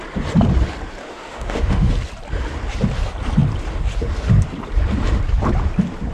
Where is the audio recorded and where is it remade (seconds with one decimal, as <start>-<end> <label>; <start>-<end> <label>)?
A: 0.0-1.0 recorded; 1.0-1.9 remade; 1.9-6.1 recorded